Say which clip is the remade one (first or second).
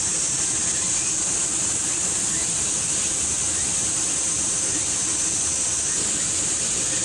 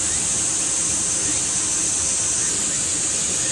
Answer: first